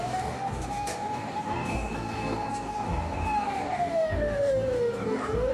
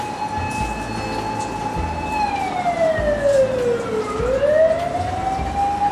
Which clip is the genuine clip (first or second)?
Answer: second